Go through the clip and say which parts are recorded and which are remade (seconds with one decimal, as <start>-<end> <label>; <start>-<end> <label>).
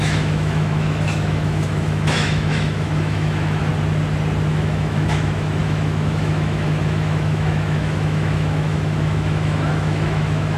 0.0-3.7 remade; 3.7-4.5 recorded; 4.5-10.6 remade